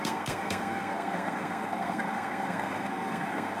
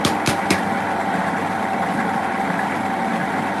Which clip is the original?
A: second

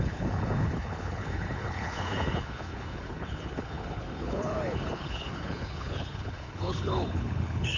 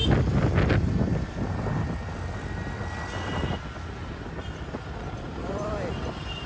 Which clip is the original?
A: second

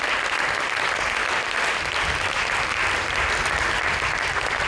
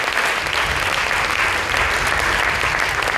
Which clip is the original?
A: second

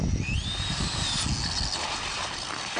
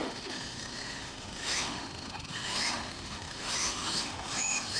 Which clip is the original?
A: first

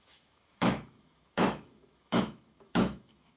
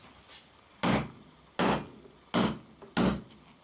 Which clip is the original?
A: second